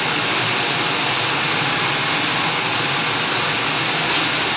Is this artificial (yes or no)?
no